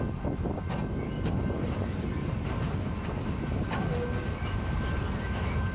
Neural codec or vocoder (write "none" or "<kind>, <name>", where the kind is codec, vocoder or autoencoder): none